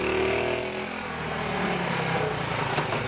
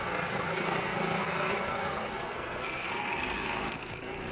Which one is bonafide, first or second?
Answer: first